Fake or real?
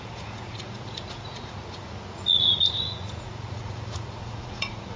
fake